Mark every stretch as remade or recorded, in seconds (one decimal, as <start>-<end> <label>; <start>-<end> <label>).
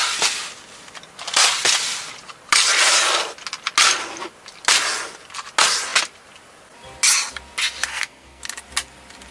0.0-7.9 recorded; 7.9-8.4 remade; 8.4-9.3 recorded